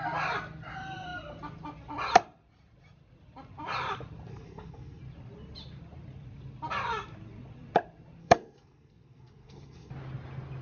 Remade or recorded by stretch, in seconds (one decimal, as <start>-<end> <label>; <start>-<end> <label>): 0.0-4.3 recorded; 4.3-5.0 remade; 5.0-8.2 recorded; 8.2-9.9 remade; 9.9-10.6 recorded